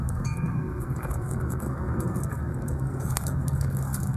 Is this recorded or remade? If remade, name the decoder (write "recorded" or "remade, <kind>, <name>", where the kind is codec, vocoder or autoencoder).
remade, codec, SNAC